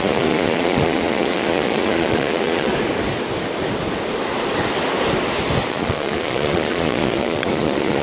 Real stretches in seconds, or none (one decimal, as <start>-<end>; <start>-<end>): 2.7-5.7